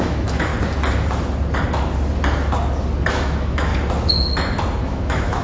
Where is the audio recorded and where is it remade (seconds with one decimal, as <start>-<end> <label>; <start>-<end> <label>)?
0.0-0.5 remade; 0.5-3.1 recorded; 3.1-3.7 remade; 3.7-4.8 recorded; 4.8-5.4 remade